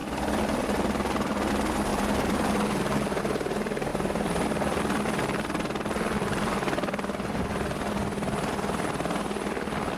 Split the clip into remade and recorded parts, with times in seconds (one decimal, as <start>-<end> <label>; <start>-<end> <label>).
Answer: 0.0-3.9 recorded; 3.9-4.8 remade; 4.8-10.0 recorded